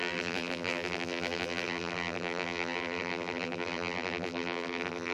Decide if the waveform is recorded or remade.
remade